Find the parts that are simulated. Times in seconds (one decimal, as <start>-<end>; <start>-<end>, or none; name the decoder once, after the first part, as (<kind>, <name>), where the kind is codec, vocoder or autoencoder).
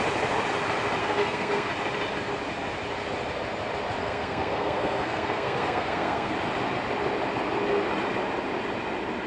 1.0-1.7 (codec, SNAC); 4.0-6.3